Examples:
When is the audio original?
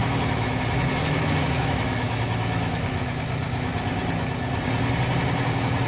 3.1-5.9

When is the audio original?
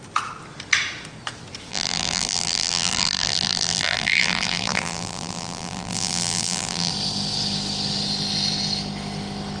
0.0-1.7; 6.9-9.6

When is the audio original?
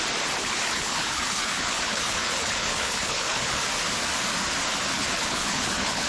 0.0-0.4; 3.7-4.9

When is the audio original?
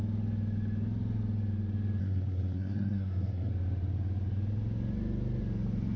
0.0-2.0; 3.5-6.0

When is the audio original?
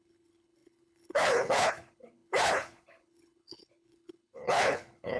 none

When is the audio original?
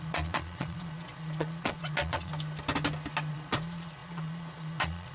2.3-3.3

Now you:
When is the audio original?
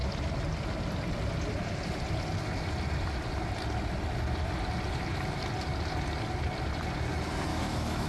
0.0-7.5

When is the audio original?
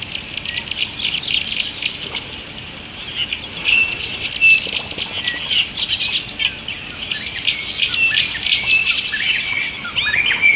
0.0-3.6; 4.3-8.8; 9.7-10.6